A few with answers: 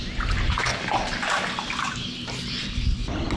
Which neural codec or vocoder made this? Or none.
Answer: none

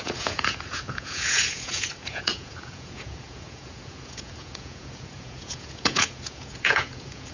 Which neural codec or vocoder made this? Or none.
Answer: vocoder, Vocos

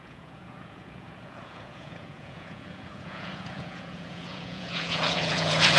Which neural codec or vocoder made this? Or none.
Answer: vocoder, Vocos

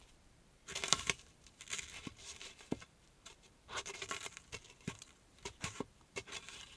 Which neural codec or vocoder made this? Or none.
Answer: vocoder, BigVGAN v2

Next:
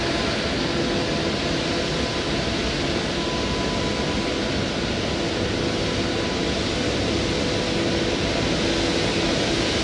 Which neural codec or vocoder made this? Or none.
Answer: none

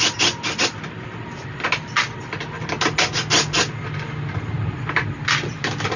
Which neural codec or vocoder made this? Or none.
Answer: none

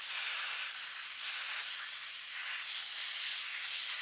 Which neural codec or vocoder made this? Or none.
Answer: none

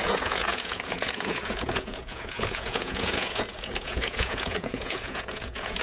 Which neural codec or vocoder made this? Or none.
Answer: vocoder, Vocos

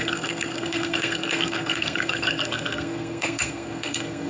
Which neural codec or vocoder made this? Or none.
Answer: codec, SNAC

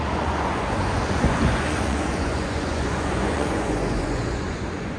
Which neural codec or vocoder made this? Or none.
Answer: vocoder, Vocos